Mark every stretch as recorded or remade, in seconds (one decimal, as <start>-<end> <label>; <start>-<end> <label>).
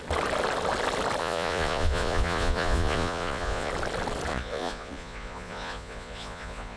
0.0-1.2 recorded; 1.2-3.7 remade; 3.7-4.3 recorded; 4.3-6.8 remade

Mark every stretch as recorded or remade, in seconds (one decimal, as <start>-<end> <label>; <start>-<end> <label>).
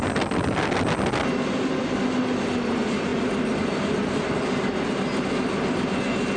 0.0-6.4 recorded